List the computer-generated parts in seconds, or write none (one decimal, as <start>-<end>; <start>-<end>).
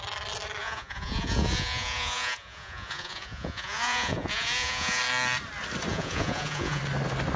0.6-5.0; 5.9-6.8